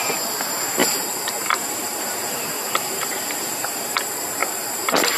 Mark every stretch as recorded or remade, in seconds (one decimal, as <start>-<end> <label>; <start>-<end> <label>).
0.0-0.8 recorded; 0.8-3.9 remade; 3.9-4.4 recorded; 4.4-5.2 remade